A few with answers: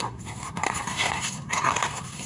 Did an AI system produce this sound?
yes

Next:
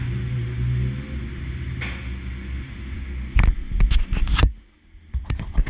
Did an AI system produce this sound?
no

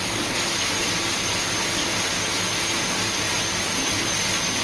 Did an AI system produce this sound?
no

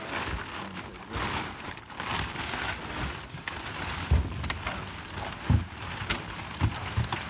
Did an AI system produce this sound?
no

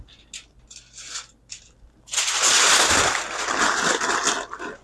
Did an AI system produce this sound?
no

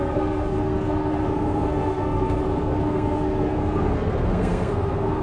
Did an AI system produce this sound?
yes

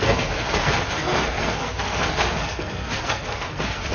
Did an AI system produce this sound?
yes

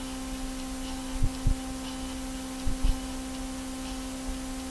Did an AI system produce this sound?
no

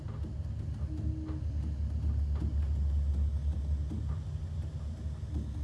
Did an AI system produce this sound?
no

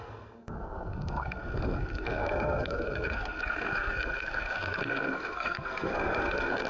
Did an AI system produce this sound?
yes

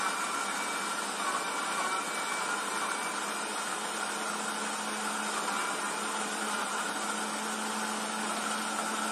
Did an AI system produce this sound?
no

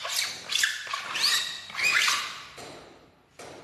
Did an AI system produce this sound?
no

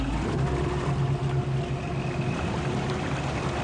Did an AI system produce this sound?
no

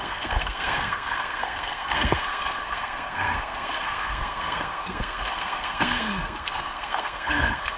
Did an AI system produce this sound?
yes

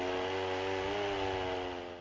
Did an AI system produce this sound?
no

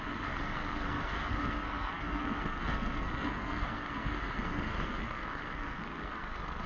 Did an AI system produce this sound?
yes